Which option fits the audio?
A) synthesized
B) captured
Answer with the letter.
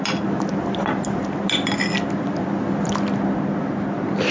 B